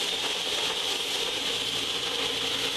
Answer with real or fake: real